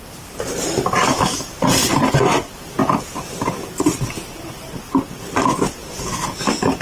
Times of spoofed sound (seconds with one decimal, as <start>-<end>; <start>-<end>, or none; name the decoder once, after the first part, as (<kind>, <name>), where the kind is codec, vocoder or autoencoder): none